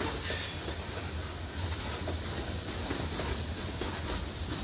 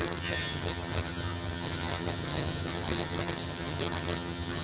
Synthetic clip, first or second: second